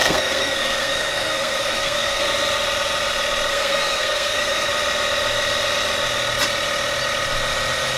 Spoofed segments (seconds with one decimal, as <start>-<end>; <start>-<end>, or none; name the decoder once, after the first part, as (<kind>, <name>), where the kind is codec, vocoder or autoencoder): 0.0-2.2 (codec, SNAC); 3.5-4.7